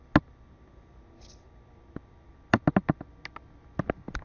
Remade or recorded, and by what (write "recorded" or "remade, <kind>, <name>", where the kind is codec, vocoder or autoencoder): recorded